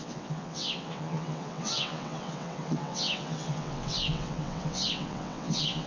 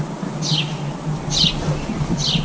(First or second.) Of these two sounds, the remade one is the first